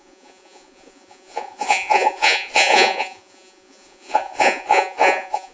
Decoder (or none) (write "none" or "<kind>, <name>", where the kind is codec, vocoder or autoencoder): vocoder, Vocos